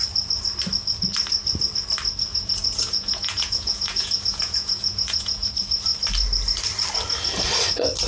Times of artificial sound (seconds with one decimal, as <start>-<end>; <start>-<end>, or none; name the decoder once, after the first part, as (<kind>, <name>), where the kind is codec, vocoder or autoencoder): 2.3-5.5 (vocoder, Vocos)